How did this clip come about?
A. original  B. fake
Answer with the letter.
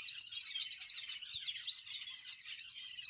A